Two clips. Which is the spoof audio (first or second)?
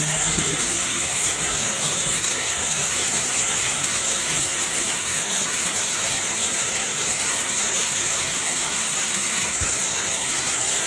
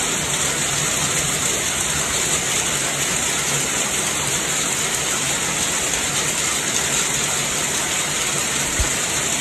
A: first